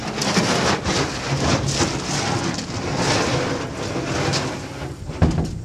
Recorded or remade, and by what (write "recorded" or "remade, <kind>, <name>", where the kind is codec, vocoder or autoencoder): recorded